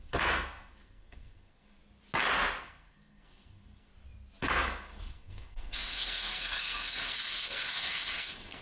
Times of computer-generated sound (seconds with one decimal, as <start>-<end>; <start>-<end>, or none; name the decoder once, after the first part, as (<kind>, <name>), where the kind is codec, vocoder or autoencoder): 0.0-1.8 (codec, SNAC); 2.6-3.9; 4.4-8.6